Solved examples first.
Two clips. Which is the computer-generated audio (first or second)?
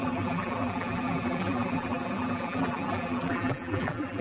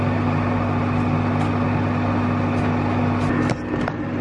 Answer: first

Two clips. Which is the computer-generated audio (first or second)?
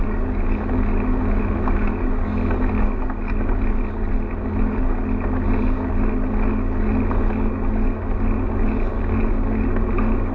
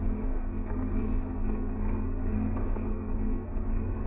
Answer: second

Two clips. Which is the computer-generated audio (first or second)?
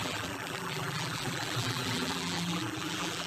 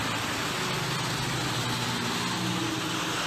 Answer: first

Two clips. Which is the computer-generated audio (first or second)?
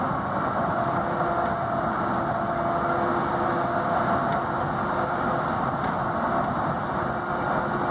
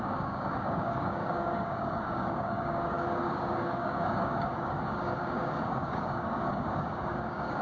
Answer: second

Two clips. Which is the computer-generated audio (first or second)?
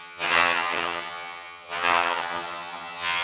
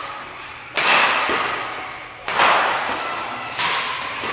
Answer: first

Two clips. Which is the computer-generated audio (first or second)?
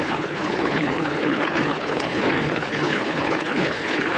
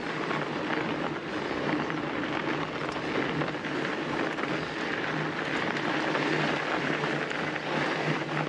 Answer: first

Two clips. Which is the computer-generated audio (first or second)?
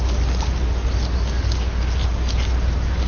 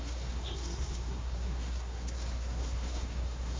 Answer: second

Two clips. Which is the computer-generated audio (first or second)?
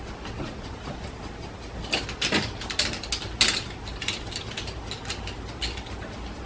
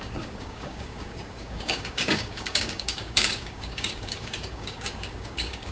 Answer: second